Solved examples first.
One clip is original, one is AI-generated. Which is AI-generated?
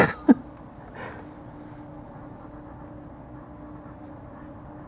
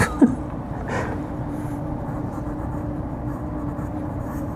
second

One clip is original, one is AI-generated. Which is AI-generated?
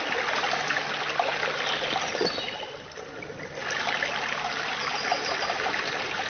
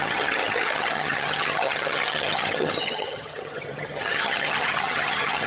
second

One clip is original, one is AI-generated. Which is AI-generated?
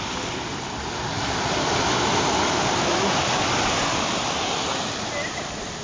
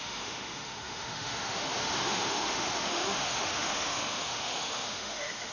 second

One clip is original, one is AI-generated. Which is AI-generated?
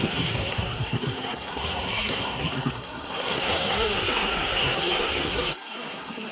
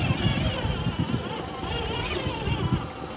first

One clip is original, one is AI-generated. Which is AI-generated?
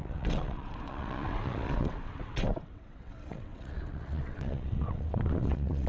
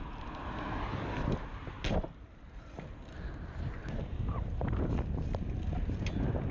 first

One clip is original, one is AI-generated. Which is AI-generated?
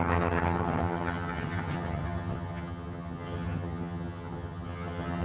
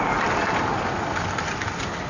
first